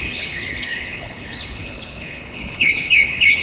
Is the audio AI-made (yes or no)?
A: yes